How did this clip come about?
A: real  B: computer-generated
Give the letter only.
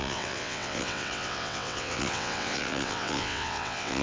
B